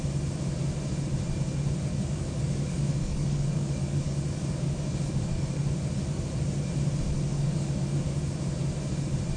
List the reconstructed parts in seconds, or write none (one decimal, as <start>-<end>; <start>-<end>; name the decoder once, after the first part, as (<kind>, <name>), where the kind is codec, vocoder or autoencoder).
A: 1.9-5.6 (codec, DAC); 7.3-8.2